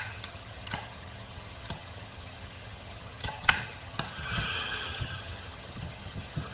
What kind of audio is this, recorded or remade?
remade